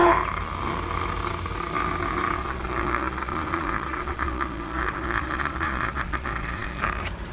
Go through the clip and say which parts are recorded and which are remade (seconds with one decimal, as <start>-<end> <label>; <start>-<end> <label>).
0.0-2.4 recorded; 2.4-6.8 remade; 6.8-7.3 recorded